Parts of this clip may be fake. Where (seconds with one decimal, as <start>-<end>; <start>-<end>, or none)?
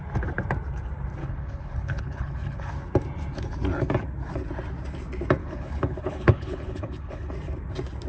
1.2-2.7; 5.4-7.3